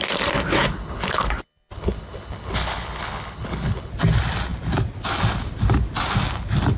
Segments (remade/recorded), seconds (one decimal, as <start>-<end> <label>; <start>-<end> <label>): 0.0-0.6 recorded; 0.6-3.9 remade; 3.9-6.8 recorded